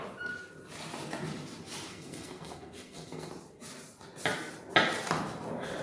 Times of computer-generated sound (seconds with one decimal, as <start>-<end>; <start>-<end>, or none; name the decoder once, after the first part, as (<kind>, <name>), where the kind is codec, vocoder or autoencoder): 1.9-3.3 (codec, SNAC)